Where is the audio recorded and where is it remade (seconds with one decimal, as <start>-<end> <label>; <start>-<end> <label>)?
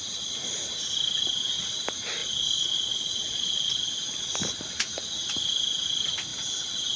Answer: 0.0-2.2 recorded; 2.2-3.7 remade; 3.7-7.0 recorded